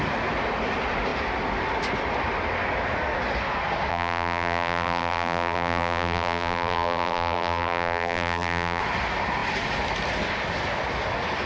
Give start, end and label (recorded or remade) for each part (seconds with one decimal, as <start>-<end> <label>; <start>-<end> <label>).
0.0-3.9 recorded; 3.9-8.8 remade; 8.8-11.5 recorded